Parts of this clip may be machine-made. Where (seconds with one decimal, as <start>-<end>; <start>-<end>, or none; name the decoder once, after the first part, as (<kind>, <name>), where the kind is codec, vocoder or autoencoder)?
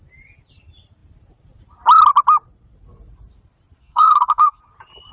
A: 3.8-4.6 (codec, SNAC)